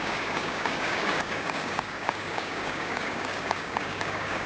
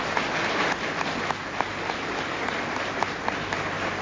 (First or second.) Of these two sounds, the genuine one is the second